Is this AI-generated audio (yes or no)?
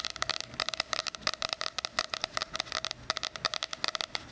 no